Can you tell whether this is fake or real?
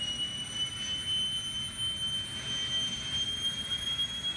real